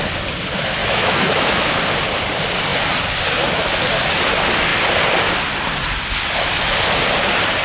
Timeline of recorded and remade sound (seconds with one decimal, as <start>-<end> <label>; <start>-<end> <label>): 0.0-0.8 recorded; 0.8-1.8 remade; 1.8-7.6 recorded